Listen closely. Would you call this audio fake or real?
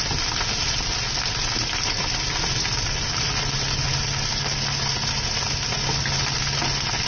real